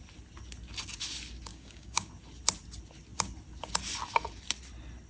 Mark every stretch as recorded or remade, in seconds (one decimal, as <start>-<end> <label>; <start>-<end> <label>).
0.0-1.5 recorded; 1.5-2.1 remade; 2.1-5.1 recorded